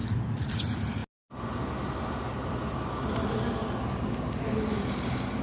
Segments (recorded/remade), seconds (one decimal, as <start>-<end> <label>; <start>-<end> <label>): 0.0-5.4 recorded